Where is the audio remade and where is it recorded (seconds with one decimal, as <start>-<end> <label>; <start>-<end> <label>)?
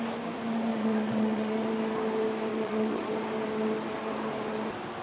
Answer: 0.0-0.7 recorded; 0.7-1.7 remade; 1.7-2.5 recorded; 2.5-3.1 remade; 3.1-5.0 recorded